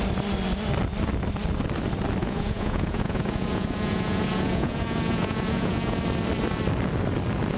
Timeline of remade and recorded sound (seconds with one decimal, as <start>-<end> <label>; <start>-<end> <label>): 0.0-2.2 recorded; 2.2-6.0 remade; 6.0-7.6 recorded